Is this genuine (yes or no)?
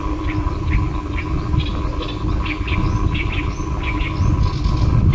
yes